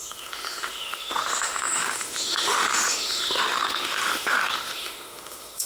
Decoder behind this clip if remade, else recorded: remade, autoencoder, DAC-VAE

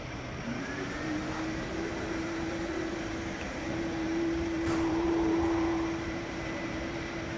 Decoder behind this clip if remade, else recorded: remade, vocoder, BigVGAN v2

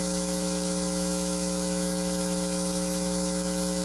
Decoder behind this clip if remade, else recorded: remade, autoencoder, DAC-VAE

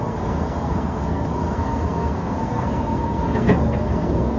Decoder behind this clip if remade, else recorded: remade, codec, SNAC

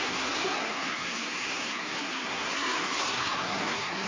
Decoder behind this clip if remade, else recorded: remade, codec, SNAC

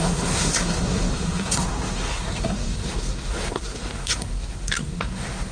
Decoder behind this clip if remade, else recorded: remade, codec, SNAC